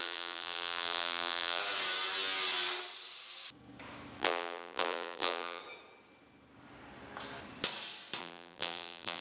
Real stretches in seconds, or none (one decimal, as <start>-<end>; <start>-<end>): 1.6-4.2; 5.6-8.2